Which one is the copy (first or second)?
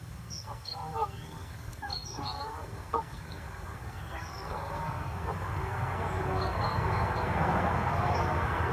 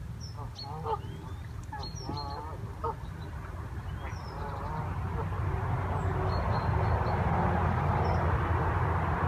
first